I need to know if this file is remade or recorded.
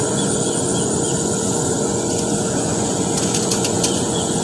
remade